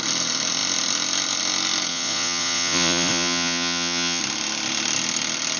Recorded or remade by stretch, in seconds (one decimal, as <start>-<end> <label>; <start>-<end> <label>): 0.0-1.9 recorded; 1.9-4.2 remade; 4.2-5.6 recorded